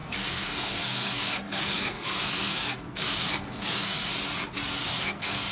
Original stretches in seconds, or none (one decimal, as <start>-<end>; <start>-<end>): 4.1-4.8